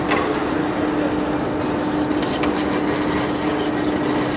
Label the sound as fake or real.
real